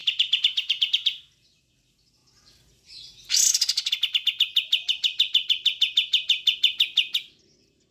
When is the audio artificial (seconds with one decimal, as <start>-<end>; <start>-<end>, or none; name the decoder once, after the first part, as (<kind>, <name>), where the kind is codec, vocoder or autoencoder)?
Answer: none